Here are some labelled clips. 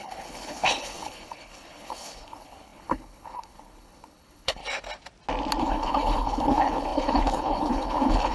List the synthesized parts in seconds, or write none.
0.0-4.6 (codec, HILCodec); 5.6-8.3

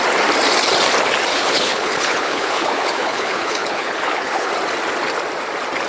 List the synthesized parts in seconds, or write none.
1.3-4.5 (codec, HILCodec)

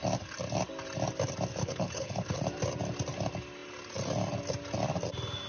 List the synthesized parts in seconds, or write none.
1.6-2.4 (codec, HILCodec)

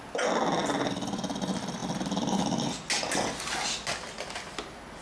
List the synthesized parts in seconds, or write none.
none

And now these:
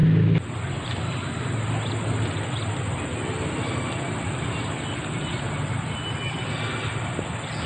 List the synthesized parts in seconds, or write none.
none

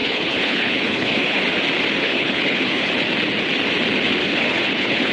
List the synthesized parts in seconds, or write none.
0.0-1.4 (codec, HILCodec); 2.0-2.9; 4.2-5.1

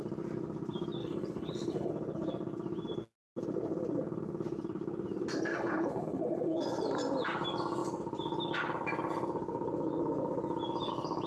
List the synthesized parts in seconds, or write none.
1.0-1.9 (codec, HILCodec); 5.5-6.6

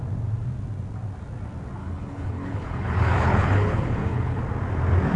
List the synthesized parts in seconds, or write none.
1.8-4.4 (codec, HILCodec)